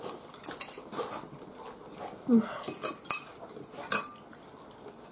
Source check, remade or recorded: remade